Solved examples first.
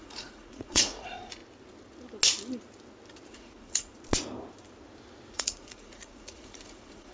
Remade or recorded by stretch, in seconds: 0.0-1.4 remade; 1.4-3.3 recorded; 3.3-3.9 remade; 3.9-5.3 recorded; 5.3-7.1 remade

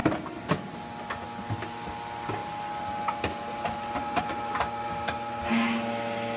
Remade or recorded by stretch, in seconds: 0.0-0.5 remade; 0.5-6.4 recorded

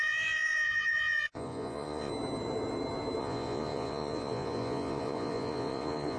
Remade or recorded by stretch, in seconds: 0.0-2.1 remade; 2.1-3.2 recorded; 3.2-6.2 remade

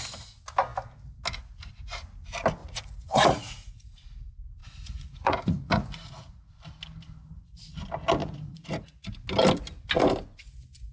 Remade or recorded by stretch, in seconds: 0.0-2.6 recorded; 2.6-3.9 remade; 3.9-4.6 recorded; 4.6-6.5 remade; 6.5-8.2 recorded; 8.2-9.1 remade; 9.1-10.9 recorded

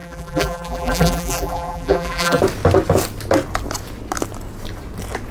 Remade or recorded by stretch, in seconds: 0.0-2.4 remade; 2.4-5.3 recorded

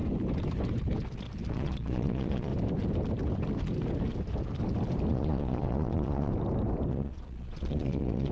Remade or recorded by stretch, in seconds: 0.0-1.5 recorded; 1.5-2.5 remade; 2.5-5.1 recorded; 5.1-6.3 remade; 6.3-6.9 recorded; 6.9-8.3 remade

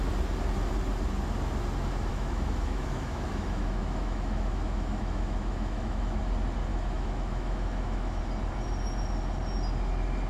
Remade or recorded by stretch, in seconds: 0.0-2.1 recorded; 2.1-6.2 remade; 6.2-6.7 recorded; 6.7-8.2 remade; 8.2-10.3 recorded